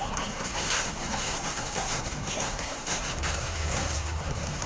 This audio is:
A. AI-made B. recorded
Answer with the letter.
A